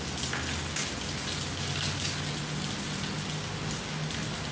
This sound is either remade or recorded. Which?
recorded